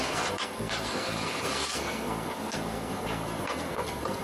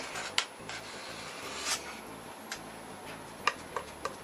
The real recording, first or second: second